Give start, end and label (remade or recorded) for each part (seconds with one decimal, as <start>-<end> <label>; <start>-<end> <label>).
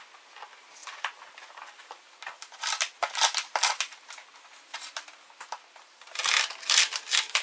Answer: 0.0-7.4 recorded